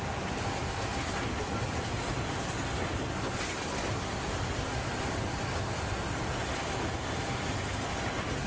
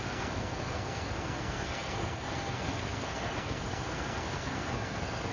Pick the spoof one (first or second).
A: second